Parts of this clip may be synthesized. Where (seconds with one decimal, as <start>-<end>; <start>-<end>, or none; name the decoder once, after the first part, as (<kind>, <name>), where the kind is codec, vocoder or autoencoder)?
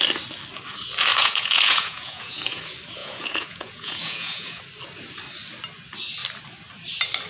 1.1-2.6 (vocoder, Vocos); 3.0-4.6